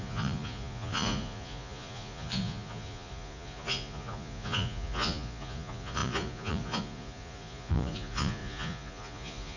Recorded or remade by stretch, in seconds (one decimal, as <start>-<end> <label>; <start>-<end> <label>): 0.0-9.6 remade